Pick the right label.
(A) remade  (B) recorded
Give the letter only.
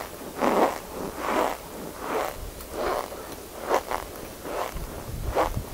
B